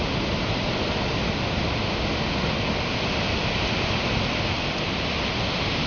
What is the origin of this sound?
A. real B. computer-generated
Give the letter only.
A